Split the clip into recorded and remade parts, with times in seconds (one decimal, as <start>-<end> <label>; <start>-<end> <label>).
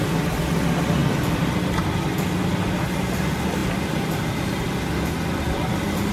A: 0.0-6.1 recorded